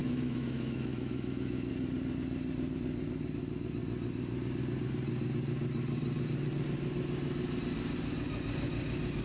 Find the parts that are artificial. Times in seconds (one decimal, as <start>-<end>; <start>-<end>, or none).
0.0-1.7

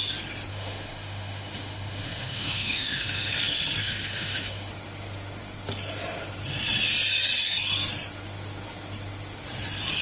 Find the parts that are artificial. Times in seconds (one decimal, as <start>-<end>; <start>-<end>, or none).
0.5-3.3; 3.8-4.7

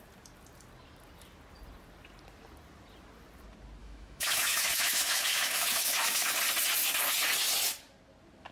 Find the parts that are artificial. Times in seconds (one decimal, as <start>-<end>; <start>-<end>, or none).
3.8-6.4

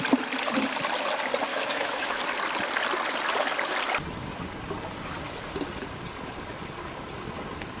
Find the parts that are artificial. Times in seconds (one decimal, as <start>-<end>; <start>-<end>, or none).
1.5-2.2